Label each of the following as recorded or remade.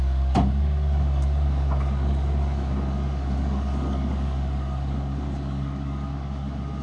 remade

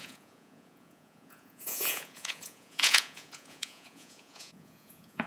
remade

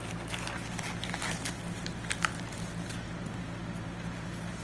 recorded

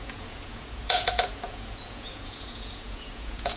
remade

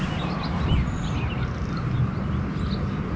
recorded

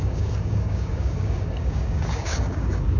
remade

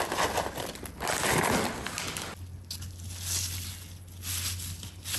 recorded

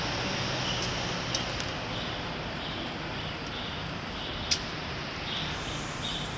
recorded